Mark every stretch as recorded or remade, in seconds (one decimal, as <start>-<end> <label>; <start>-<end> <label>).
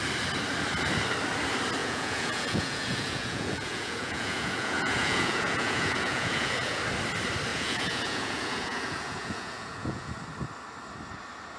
0.0-1.8 recorded; 1.8-6.8 remade; 6.8-7.5 recorded; 7.5-10.1 remade; 10.1-11.6 recorded